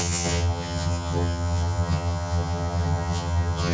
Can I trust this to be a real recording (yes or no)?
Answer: no